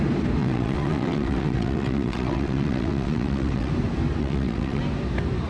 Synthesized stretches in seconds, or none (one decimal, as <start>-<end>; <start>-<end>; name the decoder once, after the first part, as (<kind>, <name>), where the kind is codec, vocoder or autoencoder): 0.4-3.7 (vocoder, WaveNeXt); 4.2-4.8

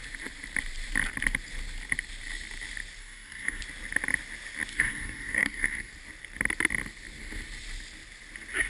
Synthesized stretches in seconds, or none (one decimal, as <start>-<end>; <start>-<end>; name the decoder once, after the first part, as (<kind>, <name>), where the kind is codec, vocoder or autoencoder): 3.0-3.6 (codec, DAC); 4.7-5.9

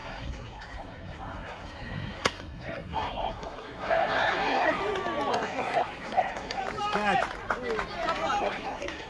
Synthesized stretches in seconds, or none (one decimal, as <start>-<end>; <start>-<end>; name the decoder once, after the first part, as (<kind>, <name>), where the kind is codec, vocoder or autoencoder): 0.0-4.8 (codec, SNAC); 5.3-6.6; 8.4-9.1

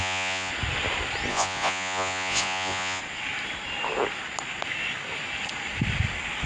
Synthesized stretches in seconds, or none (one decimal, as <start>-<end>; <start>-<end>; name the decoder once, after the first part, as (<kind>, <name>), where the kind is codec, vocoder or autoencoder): 0.0-0.5 (vocoder, Vocos); 1.3-3.0

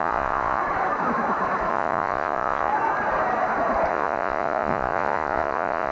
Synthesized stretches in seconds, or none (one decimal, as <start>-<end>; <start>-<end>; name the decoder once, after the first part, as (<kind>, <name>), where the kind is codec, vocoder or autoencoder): 0.0-0.6 (vocoder, Vocos); 1.7-2.7; 3.9-5.9

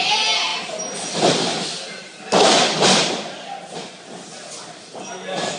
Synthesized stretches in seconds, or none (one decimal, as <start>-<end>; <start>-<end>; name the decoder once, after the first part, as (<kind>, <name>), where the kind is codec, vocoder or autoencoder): none

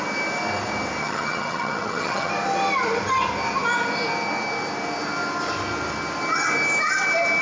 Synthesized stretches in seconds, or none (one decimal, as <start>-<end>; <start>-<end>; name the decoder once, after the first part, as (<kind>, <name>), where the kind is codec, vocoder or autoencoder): 1.0-2.3 (vocoder, HiFi-GAN)

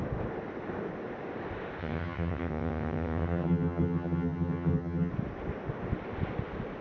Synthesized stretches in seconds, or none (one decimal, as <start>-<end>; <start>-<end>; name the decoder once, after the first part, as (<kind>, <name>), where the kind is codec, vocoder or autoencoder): 1.8-5.1 (vocoder, HiFi-GAN)